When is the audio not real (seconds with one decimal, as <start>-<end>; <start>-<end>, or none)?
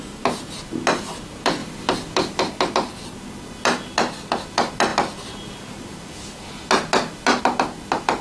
none